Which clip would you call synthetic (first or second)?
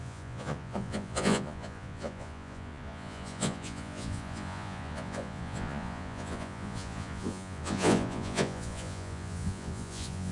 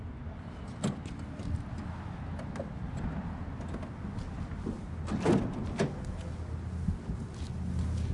first